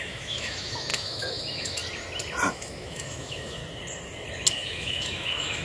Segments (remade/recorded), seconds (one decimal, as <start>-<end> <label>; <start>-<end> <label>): 0.0-1.8 remade; 1.8-2.5 recorded; 2.5-3.6 remade; 3.6-4.5 recorded; 4.5-5.6 remade